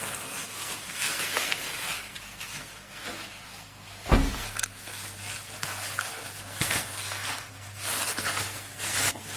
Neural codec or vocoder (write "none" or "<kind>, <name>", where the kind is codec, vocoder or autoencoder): codec, SNAC